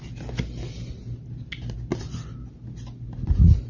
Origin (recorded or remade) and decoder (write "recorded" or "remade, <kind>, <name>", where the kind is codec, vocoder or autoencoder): recorded